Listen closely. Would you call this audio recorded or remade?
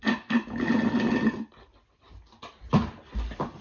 recorded